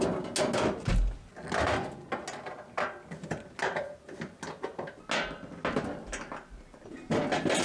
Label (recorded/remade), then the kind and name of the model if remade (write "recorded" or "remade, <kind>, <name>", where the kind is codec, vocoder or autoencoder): recorded